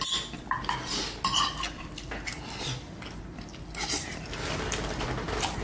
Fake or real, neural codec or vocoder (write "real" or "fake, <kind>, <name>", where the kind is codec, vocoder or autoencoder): real